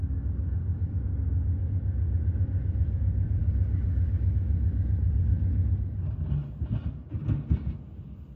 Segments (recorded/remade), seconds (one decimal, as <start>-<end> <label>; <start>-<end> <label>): 0.0-8.4 recorded